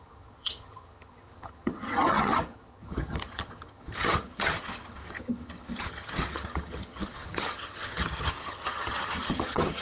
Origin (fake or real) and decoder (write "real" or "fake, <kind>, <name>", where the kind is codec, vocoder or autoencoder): fake, vocoder, HiFi-GAN